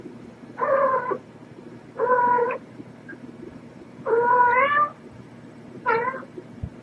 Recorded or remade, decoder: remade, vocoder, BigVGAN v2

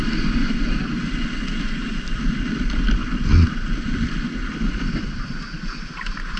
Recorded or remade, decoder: recorded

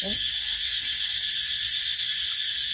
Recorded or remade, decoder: recorded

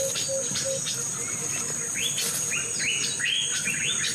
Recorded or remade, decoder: recorded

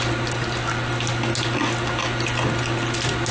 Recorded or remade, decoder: recorded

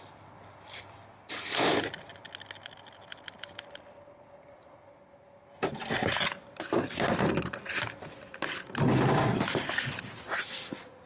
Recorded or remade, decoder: recorded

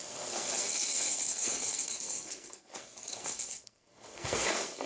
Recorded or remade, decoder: remade, codec, SNAC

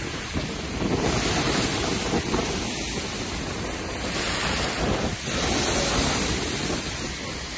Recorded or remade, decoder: recorded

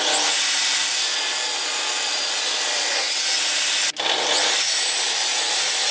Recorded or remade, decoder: recorded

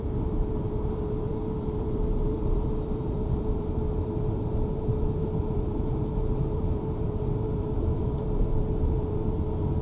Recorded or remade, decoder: remade, vocoder, BigVGAN v2